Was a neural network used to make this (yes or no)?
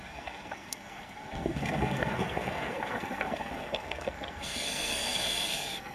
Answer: yes